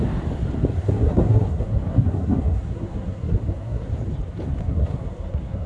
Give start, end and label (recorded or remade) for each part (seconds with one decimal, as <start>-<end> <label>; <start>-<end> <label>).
0.0-0.8 recorded; 0.8-3.9 remade; 3.9-4.6 recorded; 4.6-5.7 remade

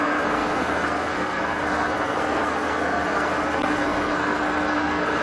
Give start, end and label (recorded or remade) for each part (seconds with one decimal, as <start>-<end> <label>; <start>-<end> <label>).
0.0-5.2 remade

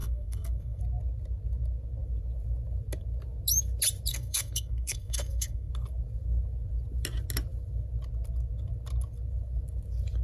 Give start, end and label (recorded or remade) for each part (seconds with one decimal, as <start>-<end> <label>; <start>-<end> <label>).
0.0-0.8 remade; 0.8-4.1 recorded; 4.1-5.7 remade; 5.7-10.2 recorded

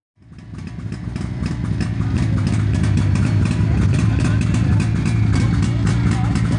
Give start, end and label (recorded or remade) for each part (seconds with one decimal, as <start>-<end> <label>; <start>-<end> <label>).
0.0-6.6 recorded